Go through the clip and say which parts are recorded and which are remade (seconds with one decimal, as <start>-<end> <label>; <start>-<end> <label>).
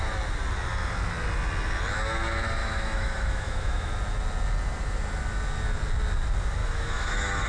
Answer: 0.0-2.6 recorded; 2.6-3.9 remade; 3.9-6.6 recorded; 6.6-7.5 remade